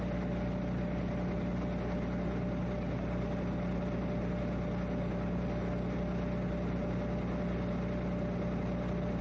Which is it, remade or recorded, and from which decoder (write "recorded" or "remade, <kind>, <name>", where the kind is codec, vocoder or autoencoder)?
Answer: recorded